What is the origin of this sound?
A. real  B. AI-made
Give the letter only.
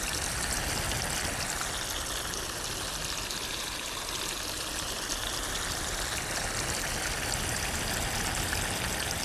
A